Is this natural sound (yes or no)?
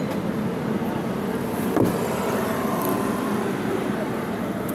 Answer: yes